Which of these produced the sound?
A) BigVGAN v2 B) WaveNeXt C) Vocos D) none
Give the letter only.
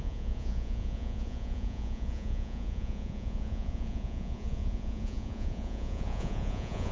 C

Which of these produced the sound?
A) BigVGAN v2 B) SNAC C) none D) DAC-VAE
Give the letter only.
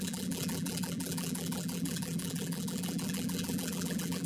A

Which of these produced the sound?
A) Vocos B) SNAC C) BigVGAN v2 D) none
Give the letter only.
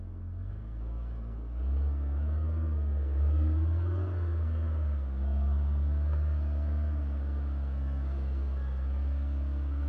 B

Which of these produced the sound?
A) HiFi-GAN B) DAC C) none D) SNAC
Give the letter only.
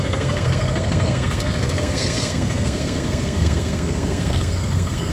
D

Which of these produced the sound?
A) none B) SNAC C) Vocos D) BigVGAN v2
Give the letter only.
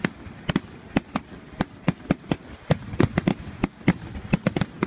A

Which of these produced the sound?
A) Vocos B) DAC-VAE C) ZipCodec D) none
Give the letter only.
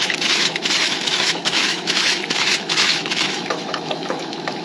B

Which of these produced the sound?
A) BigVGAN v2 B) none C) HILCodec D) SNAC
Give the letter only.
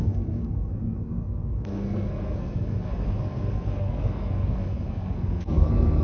D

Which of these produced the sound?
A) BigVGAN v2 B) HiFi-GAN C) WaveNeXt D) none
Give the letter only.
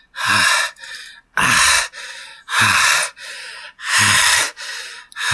A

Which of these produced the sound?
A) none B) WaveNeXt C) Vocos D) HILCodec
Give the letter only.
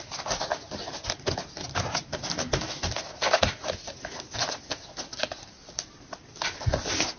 A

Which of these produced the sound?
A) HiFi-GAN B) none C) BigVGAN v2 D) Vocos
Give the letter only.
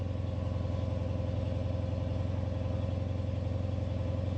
B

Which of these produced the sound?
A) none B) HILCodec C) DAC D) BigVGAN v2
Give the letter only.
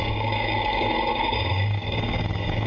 C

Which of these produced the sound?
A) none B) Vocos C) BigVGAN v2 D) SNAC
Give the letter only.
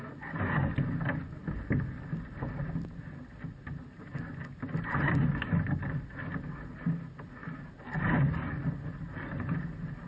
A